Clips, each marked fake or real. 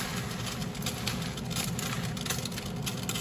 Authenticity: real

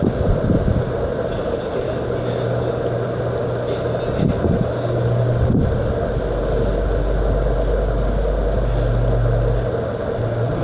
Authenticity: real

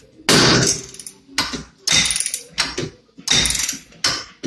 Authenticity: real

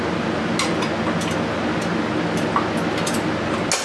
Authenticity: real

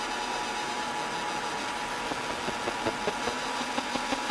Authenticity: real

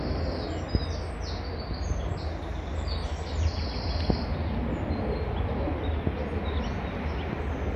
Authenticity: real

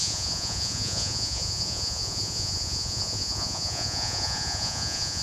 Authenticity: fake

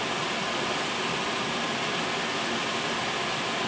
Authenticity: real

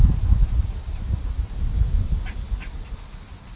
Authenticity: real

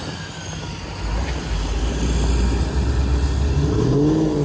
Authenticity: real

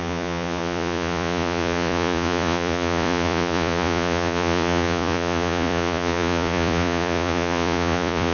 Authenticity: fake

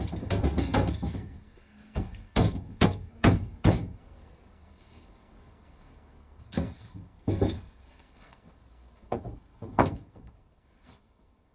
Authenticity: fake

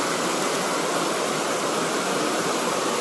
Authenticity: real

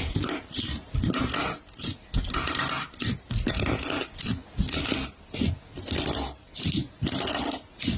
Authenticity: real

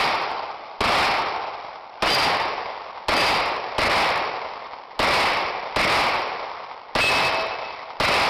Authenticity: real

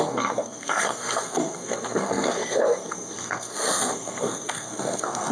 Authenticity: fake